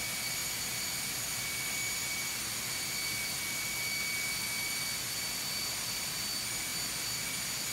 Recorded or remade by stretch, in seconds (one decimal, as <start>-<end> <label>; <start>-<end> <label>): 0.0-7.7 recorded